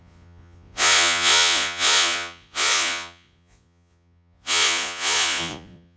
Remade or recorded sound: remade